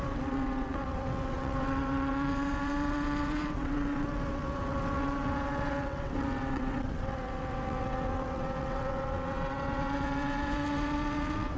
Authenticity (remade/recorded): remade